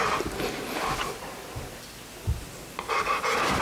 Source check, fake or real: real